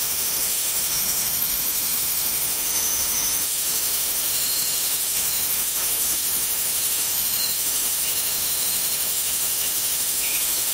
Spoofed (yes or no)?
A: yes